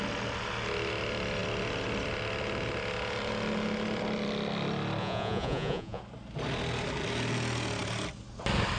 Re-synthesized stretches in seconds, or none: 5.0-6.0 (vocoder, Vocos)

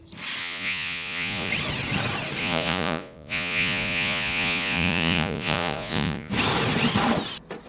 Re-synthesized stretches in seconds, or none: 0.4-1.5 (vocoder, Vocos); 2.4-6.3

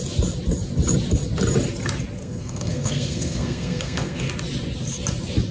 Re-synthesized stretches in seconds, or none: 2.2-4.3 (codec, SNAC)